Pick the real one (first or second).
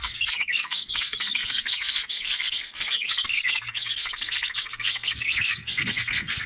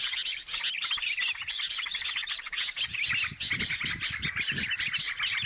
second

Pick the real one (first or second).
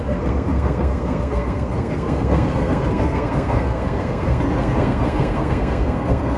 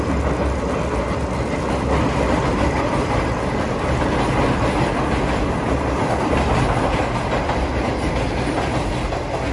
second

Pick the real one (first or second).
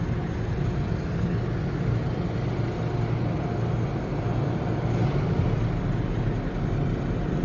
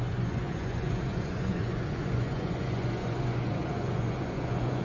first